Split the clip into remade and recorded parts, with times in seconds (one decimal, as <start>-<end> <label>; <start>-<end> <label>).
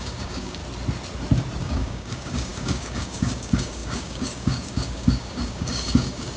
0.0-0.6 remade; 0.6-1.6 recorded; 1.6-6.4 remade